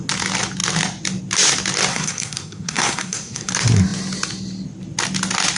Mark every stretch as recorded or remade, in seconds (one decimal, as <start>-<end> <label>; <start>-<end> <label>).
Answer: 0.0-1.9 recorded; 1.9-3.5 remade; 3.5-5.6 recorded